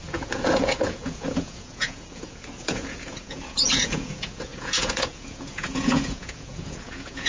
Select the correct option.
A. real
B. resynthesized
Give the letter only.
B